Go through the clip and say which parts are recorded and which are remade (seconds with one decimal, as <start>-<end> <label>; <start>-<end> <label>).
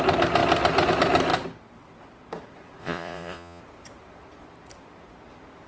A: 0.0-2.8 recorded; 2.8-3.6 remade; 3.6-5.7 recorded